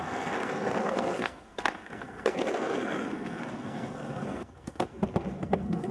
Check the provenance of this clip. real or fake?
fake